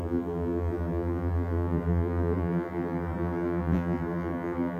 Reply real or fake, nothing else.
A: fake